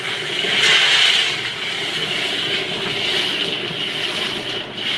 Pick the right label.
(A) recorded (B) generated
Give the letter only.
A